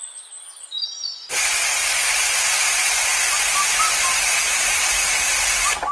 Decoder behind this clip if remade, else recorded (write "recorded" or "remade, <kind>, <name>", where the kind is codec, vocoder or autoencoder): recorded